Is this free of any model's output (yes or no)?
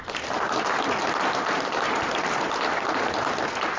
yes